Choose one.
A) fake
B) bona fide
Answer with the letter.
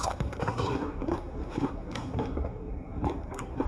A